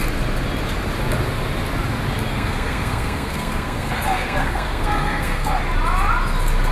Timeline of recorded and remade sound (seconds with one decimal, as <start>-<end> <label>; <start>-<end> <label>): 0.0-2.3 recorded; 2.3-5.6 remade; 5.6-6.7 recorded